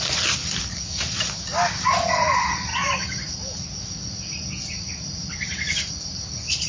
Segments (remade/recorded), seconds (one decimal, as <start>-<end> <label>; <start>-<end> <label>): 0.0-6.7 recorded